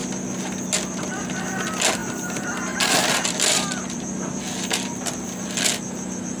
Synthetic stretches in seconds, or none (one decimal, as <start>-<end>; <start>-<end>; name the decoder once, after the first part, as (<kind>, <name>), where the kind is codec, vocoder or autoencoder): 2.0-4.4 (vocoder, BigVGAN v2)